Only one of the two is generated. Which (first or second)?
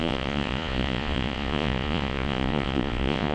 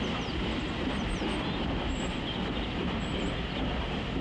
first